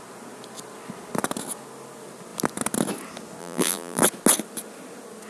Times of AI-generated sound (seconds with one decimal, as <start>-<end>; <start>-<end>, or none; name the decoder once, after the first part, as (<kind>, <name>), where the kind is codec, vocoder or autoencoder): 3.4-4.0 (vocoder, BigVGAN v2)